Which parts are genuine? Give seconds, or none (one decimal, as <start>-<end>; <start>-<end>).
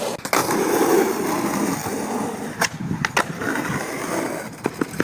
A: 0.0-5.0